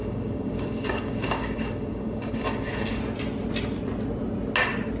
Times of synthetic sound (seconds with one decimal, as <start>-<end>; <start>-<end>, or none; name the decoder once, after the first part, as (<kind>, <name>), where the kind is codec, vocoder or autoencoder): 0.0-3.0 (codec, DAC)